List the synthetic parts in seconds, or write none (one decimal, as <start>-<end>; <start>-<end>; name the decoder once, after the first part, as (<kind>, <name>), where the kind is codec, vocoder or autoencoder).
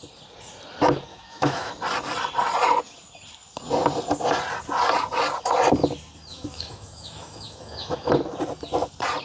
1.1-1.7 (autoencoder, DAC-VAE); 6.3-8.1